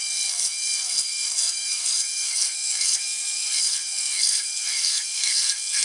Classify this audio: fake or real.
fake